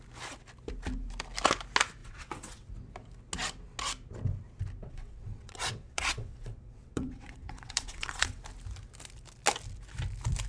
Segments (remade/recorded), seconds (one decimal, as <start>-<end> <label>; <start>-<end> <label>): 0.0-2.0 recorded; 2.0-2.7 remade; 2.7-4.8 recorded; 4.8-8.4 remade; 8.4-10.5 recorded